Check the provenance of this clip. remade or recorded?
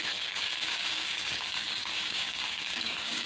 remade